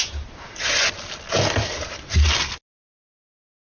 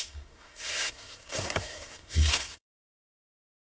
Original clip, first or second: first